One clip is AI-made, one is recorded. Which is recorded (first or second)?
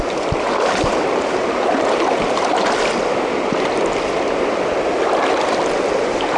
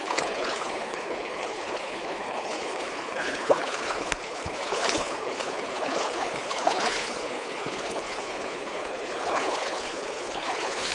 first